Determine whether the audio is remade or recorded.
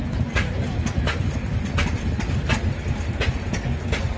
recorded